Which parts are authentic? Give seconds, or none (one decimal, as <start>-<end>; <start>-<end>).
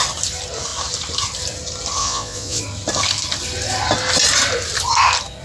0.0-2.0; 2.6-5.4